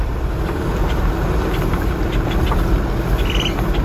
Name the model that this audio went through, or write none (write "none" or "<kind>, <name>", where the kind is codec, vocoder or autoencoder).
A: vocoder, BigVGAN v2